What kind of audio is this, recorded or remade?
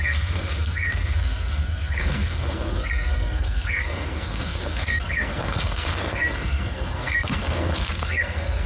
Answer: remade